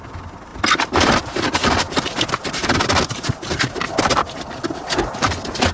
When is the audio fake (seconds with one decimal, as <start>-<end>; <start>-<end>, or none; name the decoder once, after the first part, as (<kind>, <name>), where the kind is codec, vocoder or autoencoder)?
0.5-3.9 (vocoder, BigVGAN v2)